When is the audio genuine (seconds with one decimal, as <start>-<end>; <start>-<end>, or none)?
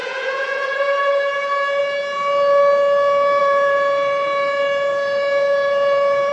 1.8-3.4